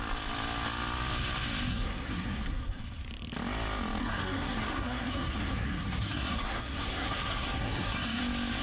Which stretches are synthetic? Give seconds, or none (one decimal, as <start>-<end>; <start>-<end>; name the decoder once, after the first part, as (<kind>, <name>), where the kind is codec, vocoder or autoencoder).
1.7-2.8 (codec, SNAC); 4.0-8.2